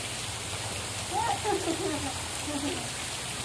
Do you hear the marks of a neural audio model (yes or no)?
no